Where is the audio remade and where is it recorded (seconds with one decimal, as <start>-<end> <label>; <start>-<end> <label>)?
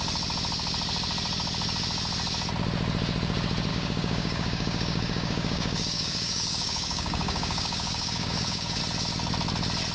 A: 0.0-3.7 recorded; 3.7-8.8 remade; 8.8-9.9 recorded